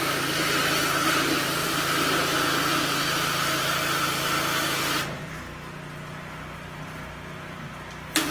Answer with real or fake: real